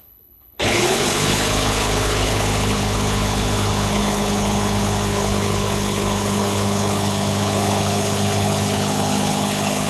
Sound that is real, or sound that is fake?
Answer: fake